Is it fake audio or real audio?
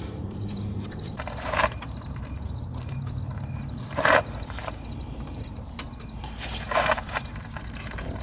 fake